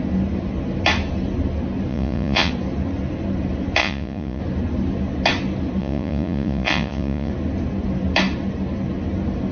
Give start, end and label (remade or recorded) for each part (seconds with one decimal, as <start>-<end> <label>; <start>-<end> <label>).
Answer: 0.0-1.9 recorded; 1.9-2.5 remade; 2.5-3.8 recorded; 3.8-4.4 remade; 4.4-5.8 recorded; 5.8-7.3 remade; 7.3-9.5 recorded